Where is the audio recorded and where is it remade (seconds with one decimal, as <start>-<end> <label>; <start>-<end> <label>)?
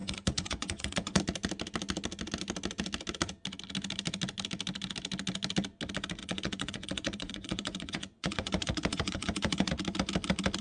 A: 0.0-1.2 remade; 1.2-6.2 recorded; 6.2-9.7 remade; 9.7-10.6 recorded